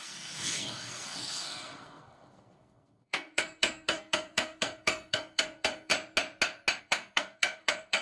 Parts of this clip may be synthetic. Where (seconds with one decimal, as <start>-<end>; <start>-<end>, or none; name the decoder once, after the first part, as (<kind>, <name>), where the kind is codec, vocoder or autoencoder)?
0.0-5.9 (codec, SNAC); 6.8-8.0